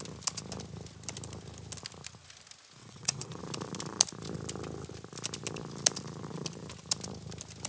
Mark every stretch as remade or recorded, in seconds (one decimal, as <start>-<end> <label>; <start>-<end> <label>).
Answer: 0.0-2.8 recorded; 2.8-3.4 remade; 3.4-7.7 recorded